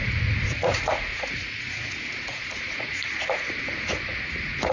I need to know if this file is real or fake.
fake